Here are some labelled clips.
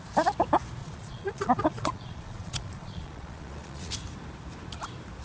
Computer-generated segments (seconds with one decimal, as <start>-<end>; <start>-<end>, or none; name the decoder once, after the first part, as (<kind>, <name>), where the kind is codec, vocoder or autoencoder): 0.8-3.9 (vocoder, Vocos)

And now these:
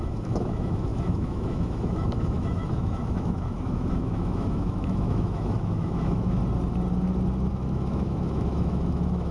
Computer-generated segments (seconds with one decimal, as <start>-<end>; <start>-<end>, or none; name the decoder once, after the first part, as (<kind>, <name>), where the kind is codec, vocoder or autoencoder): 0.0-6.4 (autoencoder, DAC-VAE); 7.5-9.3

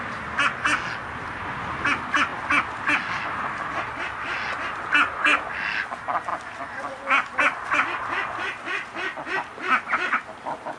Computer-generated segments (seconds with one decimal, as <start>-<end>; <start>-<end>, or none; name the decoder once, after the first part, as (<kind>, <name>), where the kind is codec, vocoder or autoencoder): none

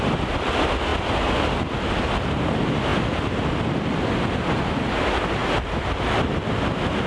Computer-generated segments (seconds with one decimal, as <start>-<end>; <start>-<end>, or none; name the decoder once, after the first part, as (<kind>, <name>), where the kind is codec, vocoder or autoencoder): none

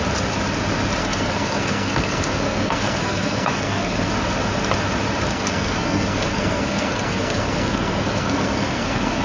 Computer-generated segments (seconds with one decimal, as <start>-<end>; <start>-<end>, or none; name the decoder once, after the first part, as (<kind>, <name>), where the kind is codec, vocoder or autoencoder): 1.0-4.1 (codec, SNAC); 5.3-9.2

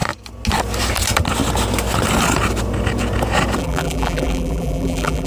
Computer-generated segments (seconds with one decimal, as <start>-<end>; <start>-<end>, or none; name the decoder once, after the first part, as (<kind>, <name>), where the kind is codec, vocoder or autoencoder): 3.6-5.3 (vocoder, BigVGAN v2)

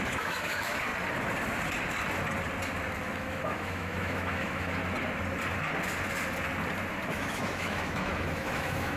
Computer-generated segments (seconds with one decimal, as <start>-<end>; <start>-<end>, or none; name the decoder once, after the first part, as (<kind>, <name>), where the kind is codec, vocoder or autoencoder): 0.0-0.9 (autoencoder, DAC-VAE); 3.1-4.8; 7.1-9.0